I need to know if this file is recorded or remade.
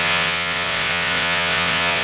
remade